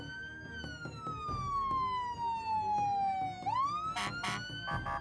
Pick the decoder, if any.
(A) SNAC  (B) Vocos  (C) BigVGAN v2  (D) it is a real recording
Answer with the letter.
D